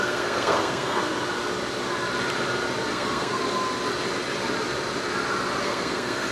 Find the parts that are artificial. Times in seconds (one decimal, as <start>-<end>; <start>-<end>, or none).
0.0-1.1; 2.9-3.4; 5.6-6.3